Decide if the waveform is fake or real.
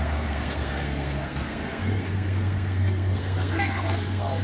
fake